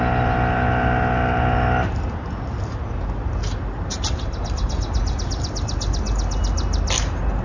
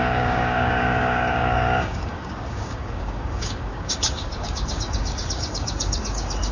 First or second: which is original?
first